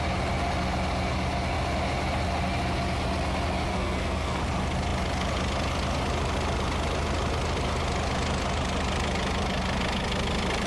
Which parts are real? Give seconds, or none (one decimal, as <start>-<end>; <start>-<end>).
0.0-3.7; 4.4-10.7

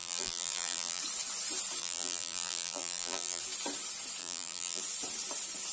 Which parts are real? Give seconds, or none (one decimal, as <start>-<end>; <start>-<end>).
1.0-1.8; 3.4-4.2; 4.8-5.7

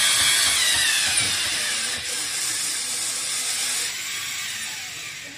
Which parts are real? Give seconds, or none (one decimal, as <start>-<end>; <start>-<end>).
0.0-5.4

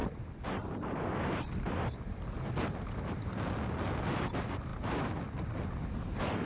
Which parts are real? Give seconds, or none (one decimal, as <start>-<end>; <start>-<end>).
0.0-6.5

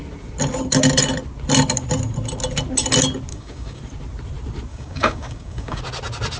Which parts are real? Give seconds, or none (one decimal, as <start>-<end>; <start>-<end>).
0.0-3.3; 3.8-4.7; 5.8-6.4

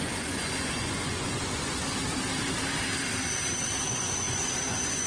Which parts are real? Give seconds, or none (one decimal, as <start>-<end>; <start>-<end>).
1.8-3.9